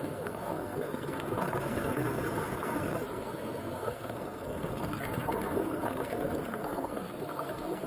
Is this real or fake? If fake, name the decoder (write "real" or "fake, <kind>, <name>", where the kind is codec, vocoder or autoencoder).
fake, codec, SNAC